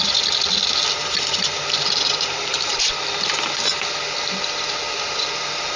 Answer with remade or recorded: remade